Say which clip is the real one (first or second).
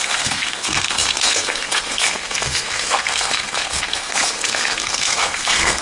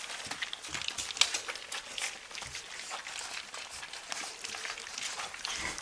second